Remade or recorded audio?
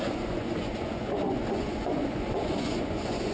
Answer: remade